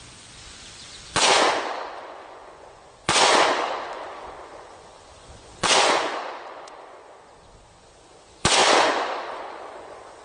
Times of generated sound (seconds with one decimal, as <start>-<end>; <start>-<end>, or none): 0.0-10.2

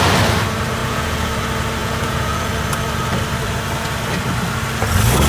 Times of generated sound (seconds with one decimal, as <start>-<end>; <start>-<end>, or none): 0.8-1.3; 1.8-2.5

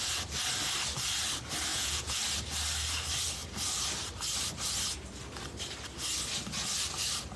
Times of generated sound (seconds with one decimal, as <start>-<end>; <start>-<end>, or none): 1.7-2.2